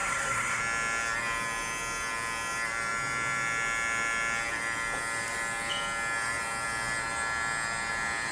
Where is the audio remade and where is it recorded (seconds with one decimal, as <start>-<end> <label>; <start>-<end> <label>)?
0.0-0.6 remade; 0.6-8.3 recorded